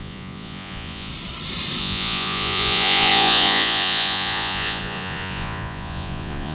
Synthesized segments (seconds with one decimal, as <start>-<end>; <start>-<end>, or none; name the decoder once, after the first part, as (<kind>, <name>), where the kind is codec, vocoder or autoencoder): 0.0-1.1 (vocoder, Vocos); 1.8-6.5